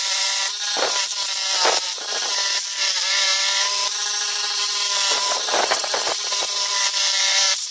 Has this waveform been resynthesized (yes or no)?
yes